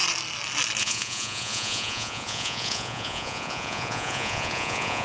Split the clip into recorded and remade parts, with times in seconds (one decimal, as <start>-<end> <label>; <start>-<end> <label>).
0.0-0.8 recorded; 0.8-5.0 remade